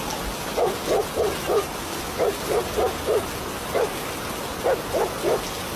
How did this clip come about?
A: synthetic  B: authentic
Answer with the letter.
B